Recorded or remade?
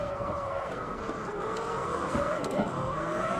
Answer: remade